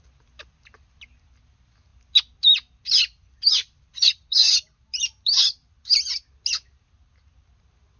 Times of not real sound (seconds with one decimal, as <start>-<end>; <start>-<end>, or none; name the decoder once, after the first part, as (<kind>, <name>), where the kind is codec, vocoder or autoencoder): none

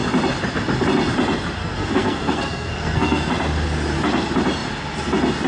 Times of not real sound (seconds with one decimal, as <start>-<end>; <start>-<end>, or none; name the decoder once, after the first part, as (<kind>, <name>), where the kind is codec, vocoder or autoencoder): 1.6-3.3 (codec, SNAC)

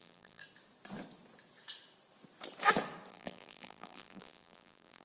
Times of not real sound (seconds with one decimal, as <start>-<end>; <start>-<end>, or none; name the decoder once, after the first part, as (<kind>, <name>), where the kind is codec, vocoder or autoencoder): 0.0-0.4 (vocoder, BigVGAN v2); 3.1-5.0

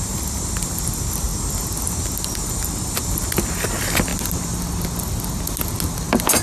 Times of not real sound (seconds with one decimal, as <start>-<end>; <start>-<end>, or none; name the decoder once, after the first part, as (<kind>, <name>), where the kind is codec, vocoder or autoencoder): none

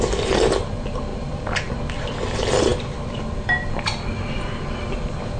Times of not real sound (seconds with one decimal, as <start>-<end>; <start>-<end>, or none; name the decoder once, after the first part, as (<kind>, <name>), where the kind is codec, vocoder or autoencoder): 1.1-1.7 (vocoder, BigVGAN v2)